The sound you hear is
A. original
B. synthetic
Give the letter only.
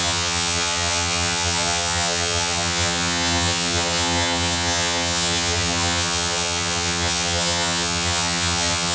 B